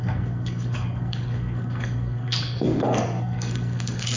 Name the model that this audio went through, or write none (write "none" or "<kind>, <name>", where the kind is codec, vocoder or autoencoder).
codec, SNAC